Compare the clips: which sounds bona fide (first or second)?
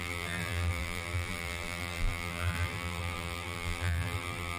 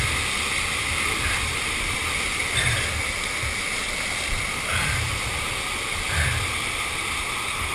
second